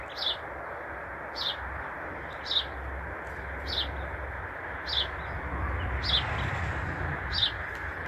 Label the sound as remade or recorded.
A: recorded